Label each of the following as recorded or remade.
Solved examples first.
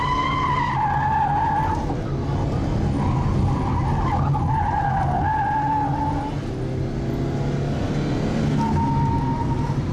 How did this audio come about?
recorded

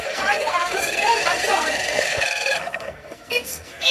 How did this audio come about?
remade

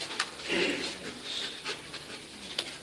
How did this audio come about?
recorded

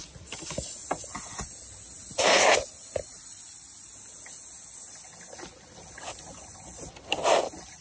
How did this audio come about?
recorded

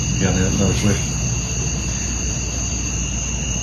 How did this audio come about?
recorded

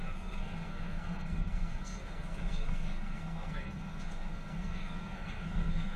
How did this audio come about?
remade